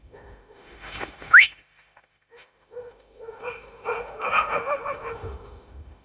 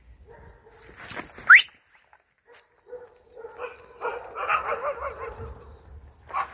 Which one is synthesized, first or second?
first